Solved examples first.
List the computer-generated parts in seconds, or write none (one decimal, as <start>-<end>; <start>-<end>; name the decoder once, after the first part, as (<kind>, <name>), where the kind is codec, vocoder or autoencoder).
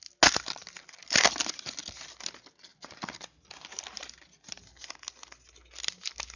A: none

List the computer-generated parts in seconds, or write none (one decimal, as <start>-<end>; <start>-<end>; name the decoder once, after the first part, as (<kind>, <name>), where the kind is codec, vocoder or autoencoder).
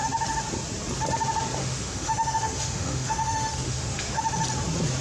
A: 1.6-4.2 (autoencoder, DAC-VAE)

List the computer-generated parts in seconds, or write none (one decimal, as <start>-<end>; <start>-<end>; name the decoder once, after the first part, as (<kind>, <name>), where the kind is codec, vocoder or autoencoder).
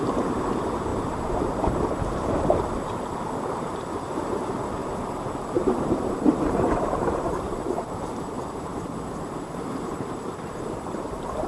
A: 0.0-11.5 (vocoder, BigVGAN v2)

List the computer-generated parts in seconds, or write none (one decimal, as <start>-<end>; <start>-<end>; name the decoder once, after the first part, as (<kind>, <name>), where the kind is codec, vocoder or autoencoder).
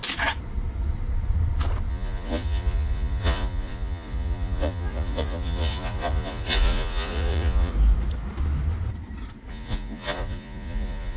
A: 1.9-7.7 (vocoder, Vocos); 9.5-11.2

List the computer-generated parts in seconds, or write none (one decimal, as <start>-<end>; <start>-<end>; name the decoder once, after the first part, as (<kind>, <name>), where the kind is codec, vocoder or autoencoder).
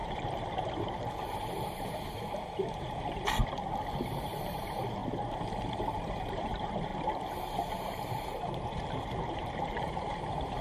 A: 0.0-3.4 (vocoder, BigVGAN v2); 4.3-5.0; 5.7-6.9; 7.5-10.6